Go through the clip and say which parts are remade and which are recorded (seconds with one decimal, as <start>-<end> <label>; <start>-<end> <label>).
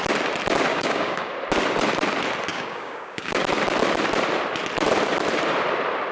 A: 0.0-0.7 recorded; 0.7-1.3 remade; 1.3-2.5 recorded; 2.5-3.4 remade; 3.4-6.1 recorded